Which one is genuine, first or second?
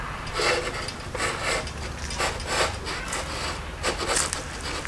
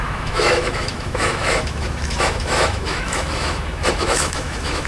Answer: first